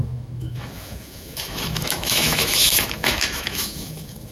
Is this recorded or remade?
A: remade